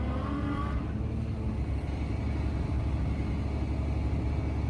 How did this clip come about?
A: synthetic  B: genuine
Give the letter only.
B